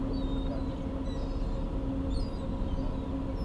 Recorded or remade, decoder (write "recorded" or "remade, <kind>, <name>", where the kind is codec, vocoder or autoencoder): recorded